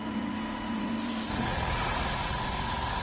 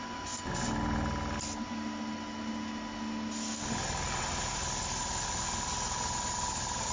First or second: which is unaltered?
second